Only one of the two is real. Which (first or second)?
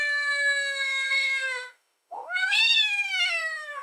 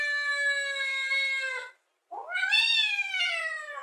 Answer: second